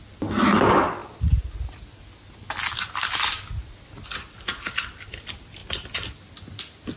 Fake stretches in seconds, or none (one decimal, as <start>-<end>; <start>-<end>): 5.6-6.6